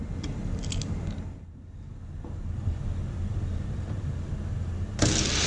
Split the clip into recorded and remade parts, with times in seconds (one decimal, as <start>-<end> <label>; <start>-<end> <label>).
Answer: 0.0-5.5 recorded